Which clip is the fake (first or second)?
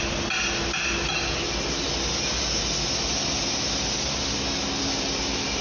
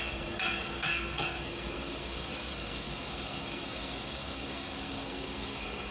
second